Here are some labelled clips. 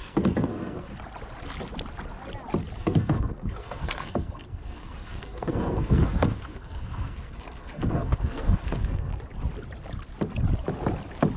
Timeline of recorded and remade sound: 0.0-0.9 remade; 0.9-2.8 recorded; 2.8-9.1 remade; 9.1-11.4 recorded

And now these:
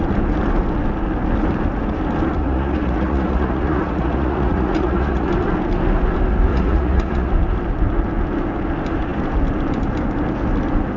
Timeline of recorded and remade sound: 0.0-2.4 recorded; 2.4-5.3 remade; 5.3-6.5 recorded; 6.5-7.3 remade; 7.3-11.0 recorded

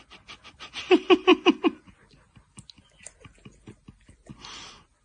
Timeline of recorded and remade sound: 0.0-5.0 recorded

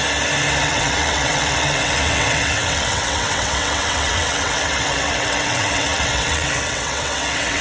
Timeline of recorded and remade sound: 0.0-0.6 recorded; 0.6-7.6 remade